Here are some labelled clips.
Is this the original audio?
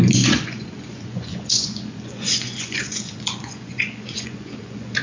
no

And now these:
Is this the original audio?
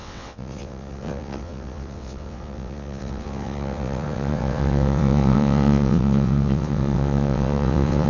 no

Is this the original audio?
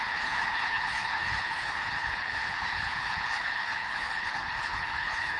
no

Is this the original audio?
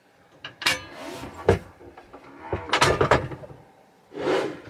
no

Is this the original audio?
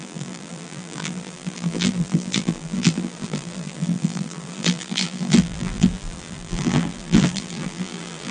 no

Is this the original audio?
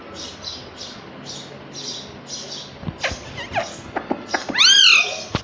yes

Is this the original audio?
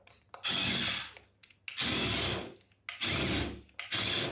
yes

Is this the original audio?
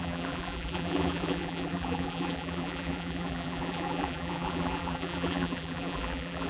no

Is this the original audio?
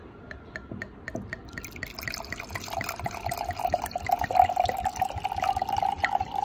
yes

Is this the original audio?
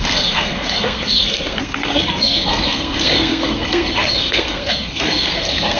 no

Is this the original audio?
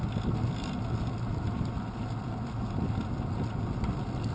yes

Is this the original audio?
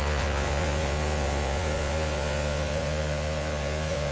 no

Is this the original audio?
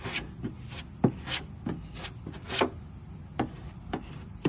yes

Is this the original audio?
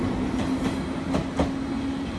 yes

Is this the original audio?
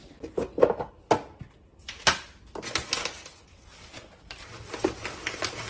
yes